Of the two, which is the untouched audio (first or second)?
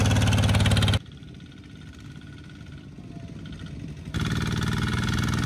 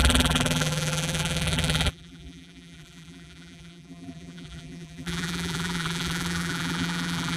first